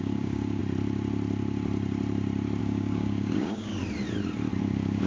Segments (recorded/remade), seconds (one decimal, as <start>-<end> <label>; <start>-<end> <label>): 0.0-0.6 remade; 0.6-2.6 recorded; 2.6-3.7 remade; 3.7-4.6 recorded; 4.6-5.1 remade